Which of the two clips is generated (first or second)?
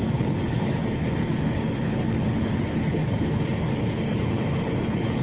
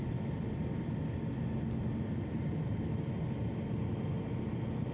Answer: first